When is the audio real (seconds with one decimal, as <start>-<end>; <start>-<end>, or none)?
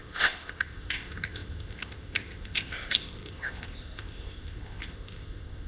none